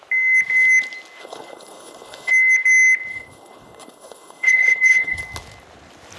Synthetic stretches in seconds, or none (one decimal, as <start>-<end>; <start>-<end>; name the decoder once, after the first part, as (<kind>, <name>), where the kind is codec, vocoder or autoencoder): 1.2-2.3 (codec, HILCodec); 3.1-5.2